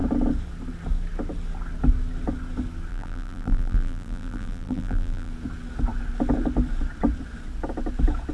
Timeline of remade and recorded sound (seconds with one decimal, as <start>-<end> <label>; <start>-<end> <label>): 0.0-2.9 recorded; 2.9-5.3 remade; 5.3-8.3 recorded